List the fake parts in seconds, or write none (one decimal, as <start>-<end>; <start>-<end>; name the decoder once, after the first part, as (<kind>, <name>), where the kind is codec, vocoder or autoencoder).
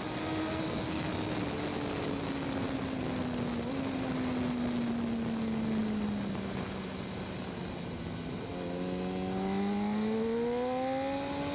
0.4-1.1 (codec, SNAC)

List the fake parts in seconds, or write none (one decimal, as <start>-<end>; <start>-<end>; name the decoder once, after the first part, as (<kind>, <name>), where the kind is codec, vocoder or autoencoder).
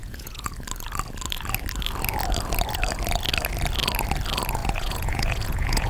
0.0-0.5 (vocoder, Vocos); 4.6-5.9